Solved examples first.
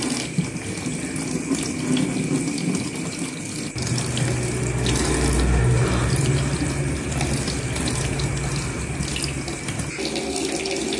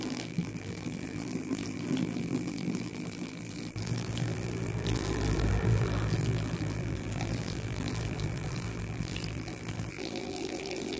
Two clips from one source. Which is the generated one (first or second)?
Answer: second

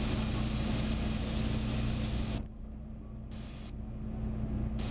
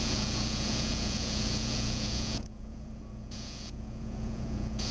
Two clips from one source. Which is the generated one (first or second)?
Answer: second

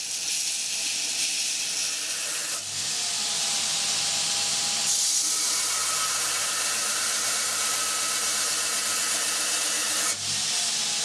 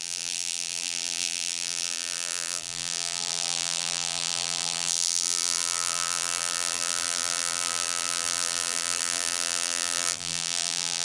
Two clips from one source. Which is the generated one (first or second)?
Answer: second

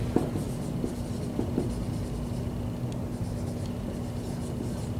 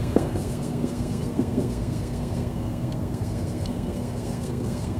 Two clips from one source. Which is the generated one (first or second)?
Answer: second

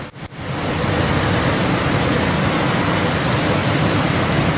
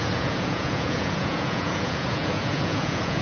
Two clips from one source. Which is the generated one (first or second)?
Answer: second